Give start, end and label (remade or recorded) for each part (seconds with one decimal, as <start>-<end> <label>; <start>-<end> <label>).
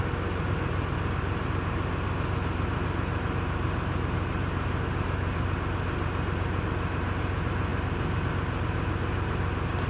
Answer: 0.0-9.9 recorded